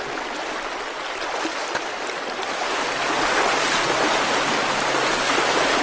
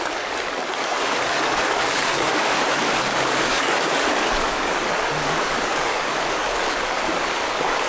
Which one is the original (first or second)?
first